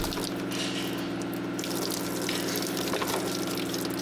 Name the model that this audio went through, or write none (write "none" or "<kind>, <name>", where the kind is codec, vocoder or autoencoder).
none